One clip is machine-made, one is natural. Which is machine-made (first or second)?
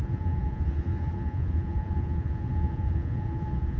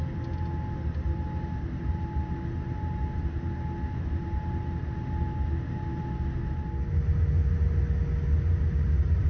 first